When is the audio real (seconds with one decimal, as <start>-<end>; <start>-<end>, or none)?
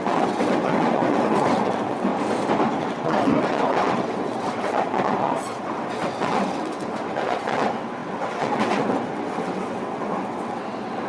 2.1-2.8